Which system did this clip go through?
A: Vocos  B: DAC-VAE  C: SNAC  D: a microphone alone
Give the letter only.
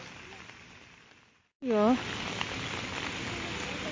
D